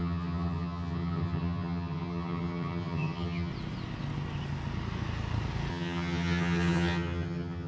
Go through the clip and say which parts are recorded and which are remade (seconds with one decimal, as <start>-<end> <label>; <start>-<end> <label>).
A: 0.0-3.5 remade; 3.5-5.7 recorded; 5.7-7.7 remade